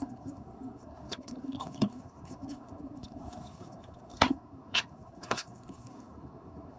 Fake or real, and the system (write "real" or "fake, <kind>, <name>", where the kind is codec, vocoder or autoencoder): fake, codec, SNAC